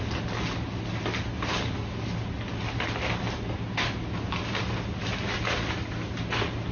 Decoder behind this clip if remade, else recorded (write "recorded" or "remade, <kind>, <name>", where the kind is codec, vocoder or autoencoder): recorded